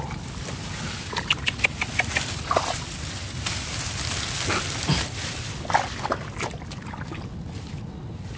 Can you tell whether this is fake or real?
real